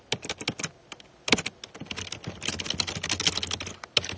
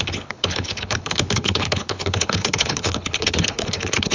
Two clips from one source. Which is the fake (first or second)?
second